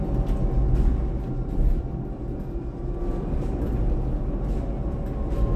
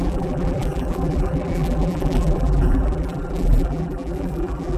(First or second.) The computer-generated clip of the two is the second